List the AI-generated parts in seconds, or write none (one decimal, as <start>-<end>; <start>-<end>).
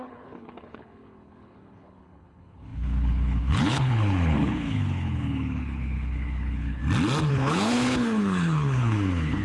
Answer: 0.0-6.8; 7.3-9.4